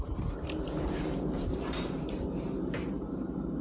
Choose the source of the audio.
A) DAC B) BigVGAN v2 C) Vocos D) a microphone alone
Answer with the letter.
B